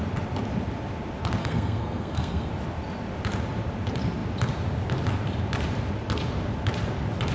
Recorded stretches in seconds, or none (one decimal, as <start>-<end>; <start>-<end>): 0.0-1.4; 2.5-7.3